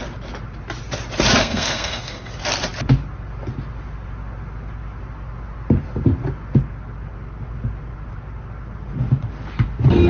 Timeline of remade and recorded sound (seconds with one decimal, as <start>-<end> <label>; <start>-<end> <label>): 0.0-1.4 recorded; 1.4-2.3 remade; 2.3-10.1 recorded